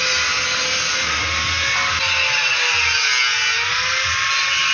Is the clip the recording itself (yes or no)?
yes